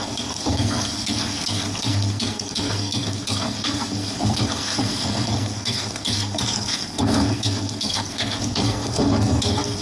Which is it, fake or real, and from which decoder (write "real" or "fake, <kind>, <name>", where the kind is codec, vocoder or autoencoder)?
fake, codec, SNAC